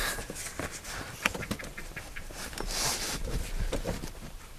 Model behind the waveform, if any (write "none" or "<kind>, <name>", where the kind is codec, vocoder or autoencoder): vocoder, BigVGAN v2